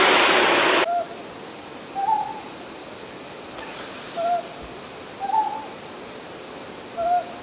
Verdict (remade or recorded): recorded